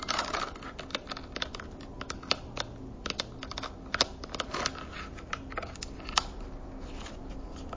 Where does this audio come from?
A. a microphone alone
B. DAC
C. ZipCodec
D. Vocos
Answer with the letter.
A